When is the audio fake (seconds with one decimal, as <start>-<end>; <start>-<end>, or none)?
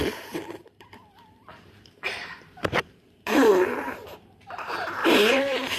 0.0-3.5; 5.0-5.8